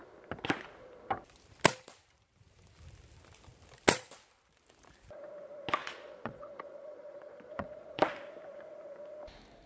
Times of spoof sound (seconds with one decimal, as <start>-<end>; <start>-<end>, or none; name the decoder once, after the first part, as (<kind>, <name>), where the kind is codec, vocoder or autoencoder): 5.8-8.0 (vocoder, Vocos)